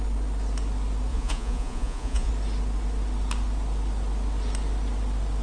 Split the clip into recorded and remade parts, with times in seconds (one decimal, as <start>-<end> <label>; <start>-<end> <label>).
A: 0.0-1.1 recorded; 1.1-2.3 remade; 2.3-5.4 recorded